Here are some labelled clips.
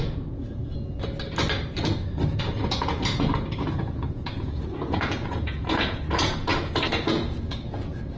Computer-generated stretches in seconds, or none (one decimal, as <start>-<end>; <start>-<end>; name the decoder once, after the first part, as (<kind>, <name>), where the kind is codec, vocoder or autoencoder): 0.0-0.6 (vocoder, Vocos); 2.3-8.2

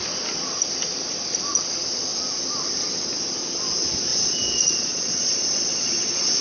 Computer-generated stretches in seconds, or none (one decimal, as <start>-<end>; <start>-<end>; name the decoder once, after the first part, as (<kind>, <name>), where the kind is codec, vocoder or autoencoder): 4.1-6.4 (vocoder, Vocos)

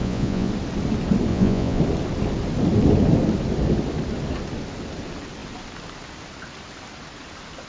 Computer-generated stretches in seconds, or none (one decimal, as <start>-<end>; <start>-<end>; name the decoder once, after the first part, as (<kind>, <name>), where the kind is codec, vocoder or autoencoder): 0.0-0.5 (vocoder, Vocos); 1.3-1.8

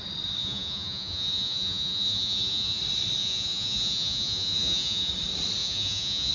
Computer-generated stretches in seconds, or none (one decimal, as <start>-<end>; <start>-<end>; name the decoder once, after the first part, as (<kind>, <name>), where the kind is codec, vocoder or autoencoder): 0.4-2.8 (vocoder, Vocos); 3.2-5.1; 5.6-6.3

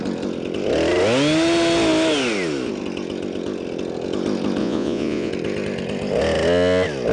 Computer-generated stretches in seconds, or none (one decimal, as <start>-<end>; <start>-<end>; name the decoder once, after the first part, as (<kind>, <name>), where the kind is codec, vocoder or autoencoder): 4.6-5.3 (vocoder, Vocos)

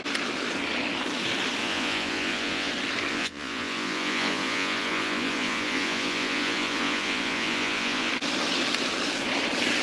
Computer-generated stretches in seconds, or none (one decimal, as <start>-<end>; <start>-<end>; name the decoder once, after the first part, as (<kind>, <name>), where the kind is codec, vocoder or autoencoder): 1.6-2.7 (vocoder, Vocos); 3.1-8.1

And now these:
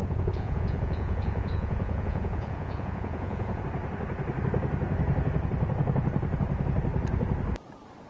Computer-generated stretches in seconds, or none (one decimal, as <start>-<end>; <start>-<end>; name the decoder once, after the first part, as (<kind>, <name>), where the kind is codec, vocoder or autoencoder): 0.0-3.6 (vocoder, Vocos)

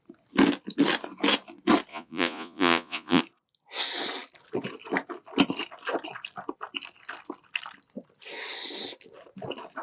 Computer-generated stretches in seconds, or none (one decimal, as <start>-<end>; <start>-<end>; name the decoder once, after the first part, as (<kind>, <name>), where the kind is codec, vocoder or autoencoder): 1.9-3.2 (vocoder, Vocos)